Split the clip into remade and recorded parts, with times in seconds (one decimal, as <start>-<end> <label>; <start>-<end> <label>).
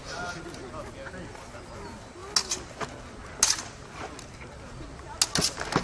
0.0-5.8 recorded